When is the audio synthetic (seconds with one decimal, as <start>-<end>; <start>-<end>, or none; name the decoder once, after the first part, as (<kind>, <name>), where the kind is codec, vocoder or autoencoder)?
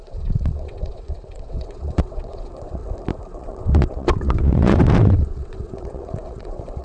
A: 0.0-2.8 (vocoder, WaveNeXt); 3.3-6.8